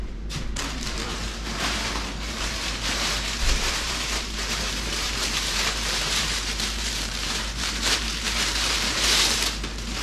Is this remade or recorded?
remade